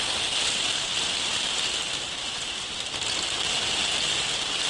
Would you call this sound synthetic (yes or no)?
no